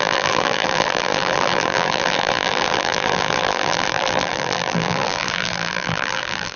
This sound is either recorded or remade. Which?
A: remade